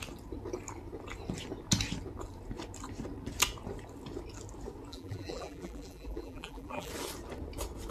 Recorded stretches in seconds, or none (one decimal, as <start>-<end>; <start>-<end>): 0.0-4.9; 6.9-7.9

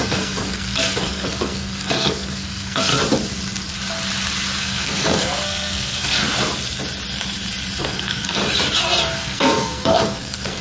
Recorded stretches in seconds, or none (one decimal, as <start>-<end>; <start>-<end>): 2.9-4.6; 6.2-7.8; 8.4-9.2

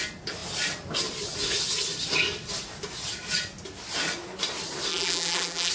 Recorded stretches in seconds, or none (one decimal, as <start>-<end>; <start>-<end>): 0.0-4.9